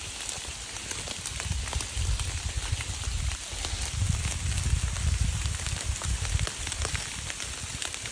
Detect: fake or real real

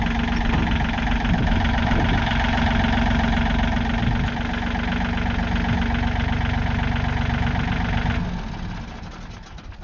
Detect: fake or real real